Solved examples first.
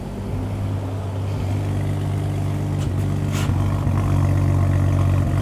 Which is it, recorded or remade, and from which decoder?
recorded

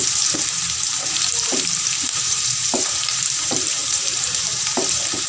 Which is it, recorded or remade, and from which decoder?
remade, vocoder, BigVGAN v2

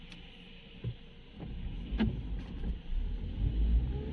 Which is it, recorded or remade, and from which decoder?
recorded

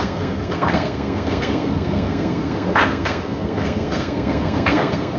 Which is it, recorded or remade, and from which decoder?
remade, codec, SNAC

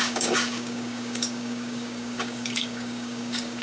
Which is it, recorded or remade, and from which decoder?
remade, codec, DAC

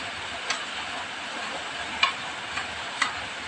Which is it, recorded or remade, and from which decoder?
recorded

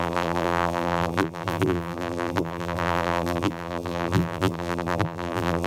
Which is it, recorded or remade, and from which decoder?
remade, vocoder, BigVGAN v2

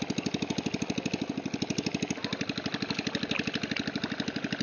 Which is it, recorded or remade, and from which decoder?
recorded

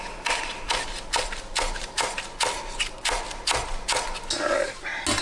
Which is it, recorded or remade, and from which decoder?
recorded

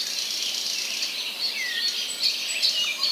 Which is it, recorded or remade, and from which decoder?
recorded